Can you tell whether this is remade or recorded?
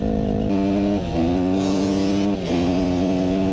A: recorded